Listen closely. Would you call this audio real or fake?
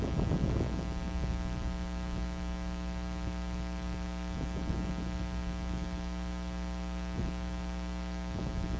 real